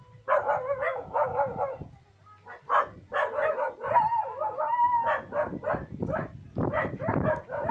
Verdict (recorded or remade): recorded